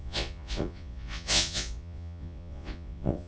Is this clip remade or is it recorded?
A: remade